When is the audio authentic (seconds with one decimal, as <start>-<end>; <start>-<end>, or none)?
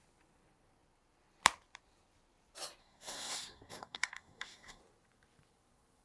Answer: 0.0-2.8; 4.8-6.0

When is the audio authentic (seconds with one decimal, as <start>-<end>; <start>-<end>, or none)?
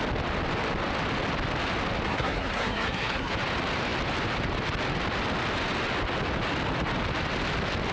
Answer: 0.0-2.1; 3.3-7.9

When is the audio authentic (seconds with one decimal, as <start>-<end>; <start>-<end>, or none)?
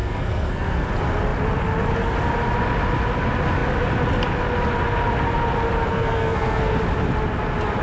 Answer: 0.9-5.9; 6.8-7.8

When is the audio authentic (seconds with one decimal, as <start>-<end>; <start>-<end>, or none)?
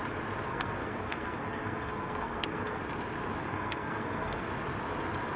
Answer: 0.0-0.5; 2.8-3.4; 4.5-5.4